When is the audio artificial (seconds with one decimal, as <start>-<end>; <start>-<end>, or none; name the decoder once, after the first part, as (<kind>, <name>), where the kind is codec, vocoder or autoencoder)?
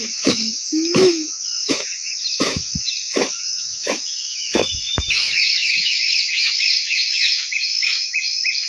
0.0-8.7 (autoencoder, DAC-VAE)